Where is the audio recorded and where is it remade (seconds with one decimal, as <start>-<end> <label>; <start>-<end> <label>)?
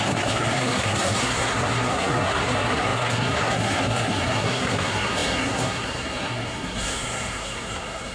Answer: 0.0-8.1 remade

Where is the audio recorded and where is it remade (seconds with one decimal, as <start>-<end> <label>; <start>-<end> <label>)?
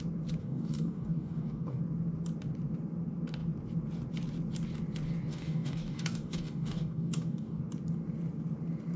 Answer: 0.0-0.4 recorded; 0.4-1.8 remade; 1.8-5.3 recorded; 5.3-7.6 remade; 7.6-9.0 recorded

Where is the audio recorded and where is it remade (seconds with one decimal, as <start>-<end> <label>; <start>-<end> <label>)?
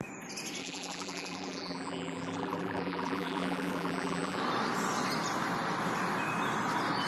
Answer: 0.0-0.6 recorded; 0.6-4.4 remade; 4.4-7.1 recorded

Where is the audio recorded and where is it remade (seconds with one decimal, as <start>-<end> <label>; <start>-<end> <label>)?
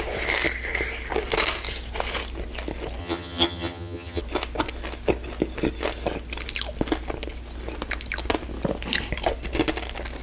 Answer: 0.0-3.0 recorded; 3.0-4.2 remade; 4.2-10.2 recorded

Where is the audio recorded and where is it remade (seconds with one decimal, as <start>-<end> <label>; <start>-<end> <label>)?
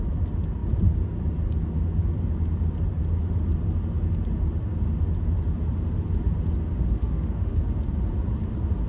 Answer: 0.0-7.0 recorded; 7.0-7.6 remade; 7.6-8.9 recorded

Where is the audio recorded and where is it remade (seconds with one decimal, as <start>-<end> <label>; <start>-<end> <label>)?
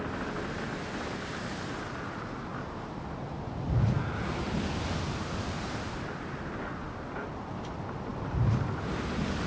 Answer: 0.0-9.5 recorded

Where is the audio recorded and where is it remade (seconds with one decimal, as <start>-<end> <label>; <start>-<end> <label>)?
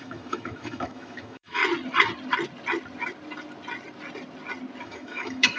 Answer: 0.0-1.6 remade; 1.6-4.8 recorded; 4.8-5.6 remade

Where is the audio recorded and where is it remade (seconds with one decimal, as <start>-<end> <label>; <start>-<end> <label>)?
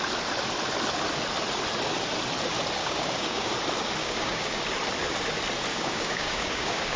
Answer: 0.0-2.8 recorded; 2.8-3.5 remade; 3.5-4.0 recorded; 4.0-4.6 remade; 4.6-5.7 recorded; 5.7-7.0 remade